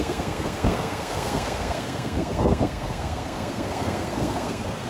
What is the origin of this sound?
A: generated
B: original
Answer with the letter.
A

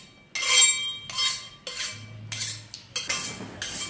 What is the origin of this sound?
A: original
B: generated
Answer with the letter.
A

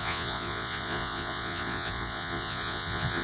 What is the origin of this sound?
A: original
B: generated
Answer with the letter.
B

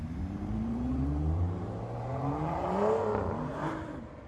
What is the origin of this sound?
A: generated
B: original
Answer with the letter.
A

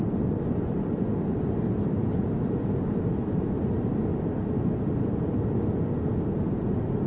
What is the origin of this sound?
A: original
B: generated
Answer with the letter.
A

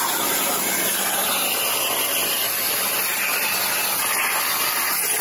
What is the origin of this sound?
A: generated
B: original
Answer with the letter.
B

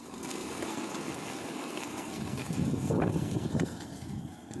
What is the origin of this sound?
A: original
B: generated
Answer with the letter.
B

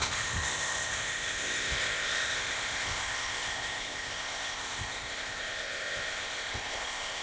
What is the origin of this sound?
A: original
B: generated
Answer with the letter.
B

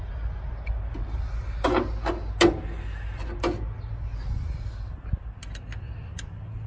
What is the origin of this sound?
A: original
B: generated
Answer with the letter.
A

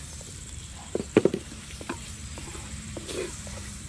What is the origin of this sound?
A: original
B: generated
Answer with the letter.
B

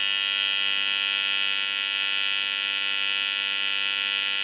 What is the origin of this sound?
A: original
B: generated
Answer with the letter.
A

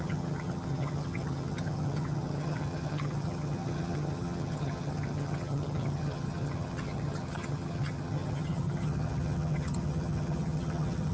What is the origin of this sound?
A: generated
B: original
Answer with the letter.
A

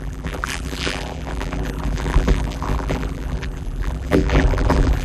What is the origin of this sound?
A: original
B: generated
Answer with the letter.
B